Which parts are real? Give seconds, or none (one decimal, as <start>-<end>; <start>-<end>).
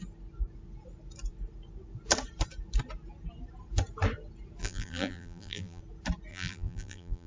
0.0-4.6; 5.8-6.3